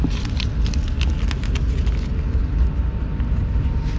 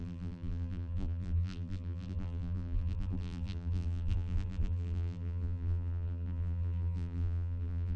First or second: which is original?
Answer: first